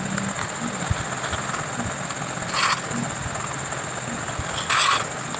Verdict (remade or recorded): recorded